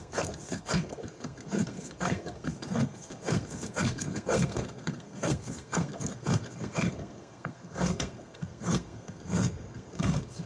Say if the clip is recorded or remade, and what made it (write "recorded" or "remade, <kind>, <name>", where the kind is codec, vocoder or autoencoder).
remade, codec, SNAC